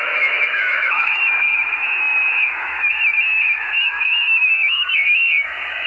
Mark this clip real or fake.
fake